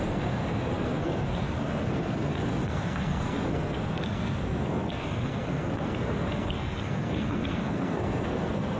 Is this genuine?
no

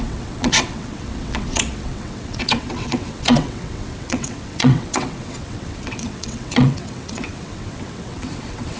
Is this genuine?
no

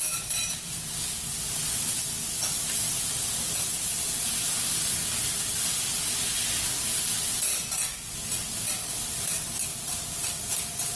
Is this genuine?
yes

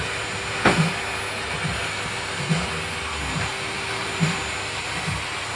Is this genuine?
yes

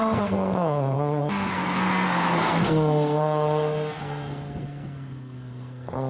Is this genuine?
no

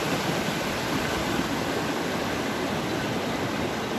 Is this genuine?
yes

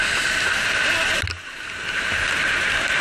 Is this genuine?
yes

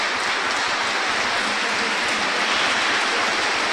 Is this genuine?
yes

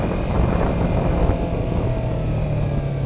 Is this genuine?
yes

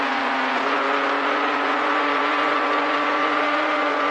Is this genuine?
no